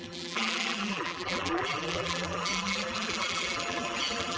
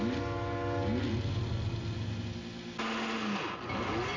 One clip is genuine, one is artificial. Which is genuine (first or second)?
second